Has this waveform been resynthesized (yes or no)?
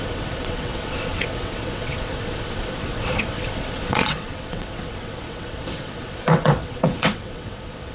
yes